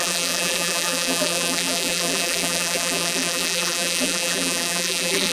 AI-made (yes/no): yes